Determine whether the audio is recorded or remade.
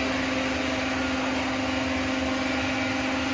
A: recorded